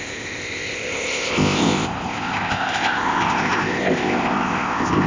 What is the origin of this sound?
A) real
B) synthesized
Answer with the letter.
B